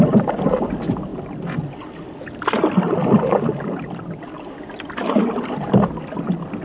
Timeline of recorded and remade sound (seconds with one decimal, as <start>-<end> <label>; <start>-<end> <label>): 0.0-6.6 recorded